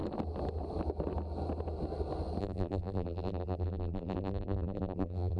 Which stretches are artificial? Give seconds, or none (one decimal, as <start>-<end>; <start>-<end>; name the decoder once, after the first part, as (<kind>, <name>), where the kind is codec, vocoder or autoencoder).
2.4-5.4 (vocoder, BigVGAN v2)